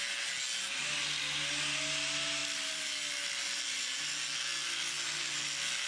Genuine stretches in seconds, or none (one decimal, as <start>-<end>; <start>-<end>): 0.0-2.4; 3.3-5.9